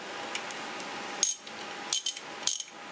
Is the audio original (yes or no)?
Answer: yes